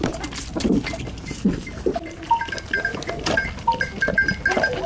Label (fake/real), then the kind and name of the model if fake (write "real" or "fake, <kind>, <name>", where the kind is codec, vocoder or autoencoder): real